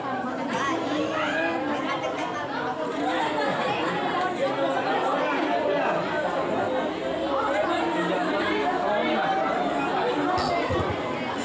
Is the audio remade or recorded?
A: recorded